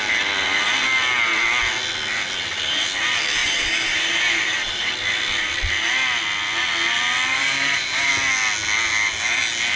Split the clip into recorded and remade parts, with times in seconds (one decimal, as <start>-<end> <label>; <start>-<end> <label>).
0.0-3.4 recorded; 3.4-4.9 remade; 4.9-7.3 recorded; 7.3-8.1 remade; 8.1-9.8 recorded